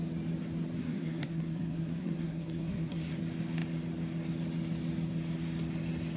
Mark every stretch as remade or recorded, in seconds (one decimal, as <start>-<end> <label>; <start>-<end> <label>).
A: 0.0-0.8 recorded; 0.8-3.1 remade; 3.1-6.2 recorded